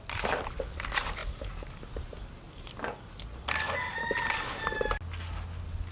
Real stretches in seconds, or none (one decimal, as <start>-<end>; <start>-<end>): 0.0-5.9